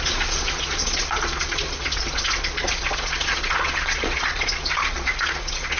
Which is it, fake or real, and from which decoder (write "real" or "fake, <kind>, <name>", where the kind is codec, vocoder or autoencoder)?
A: fake, vocoder, Vocos